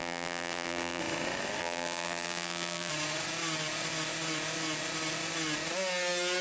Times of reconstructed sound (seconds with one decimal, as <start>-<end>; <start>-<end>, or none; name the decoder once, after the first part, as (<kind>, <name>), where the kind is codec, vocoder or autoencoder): 0.0-1.0 (vocoder, BigVGAN v2); 1.6-2.9